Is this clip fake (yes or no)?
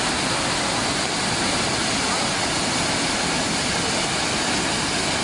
no